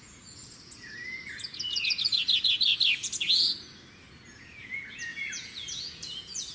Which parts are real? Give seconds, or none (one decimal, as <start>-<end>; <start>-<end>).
2.7-4.3